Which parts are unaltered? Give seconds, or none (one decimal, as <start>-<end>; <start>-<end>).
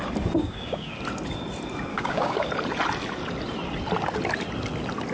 0.0-0.4; 1.0-1.9; 2.5-5.1